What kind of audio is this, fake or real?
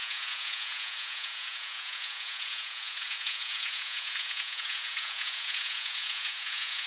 fake